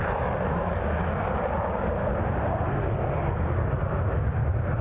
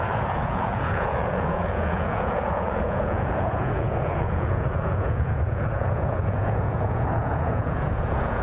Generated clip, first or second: second